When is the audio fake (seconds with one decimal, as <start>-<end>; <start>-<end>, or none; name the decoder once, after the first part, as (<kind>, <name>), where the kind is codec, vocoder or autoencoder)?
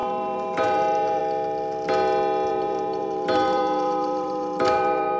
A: 0.0-1.2 (vocoder, BigVGAN v2); 2.5-5.2